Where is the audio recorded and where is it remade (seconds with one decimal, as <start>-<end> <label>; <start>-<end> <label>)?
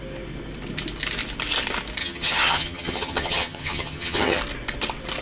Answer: 0.0-2.0 recorded; 2.0-4.4 remade; 4.4-5.2 recorded